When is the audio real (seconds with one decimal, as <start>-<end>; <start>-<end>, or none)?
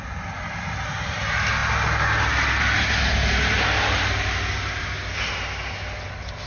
0.0-6.5